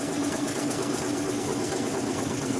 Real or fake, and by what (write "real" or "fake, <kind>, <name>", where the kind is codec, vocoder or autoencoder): fake, codec, SNAC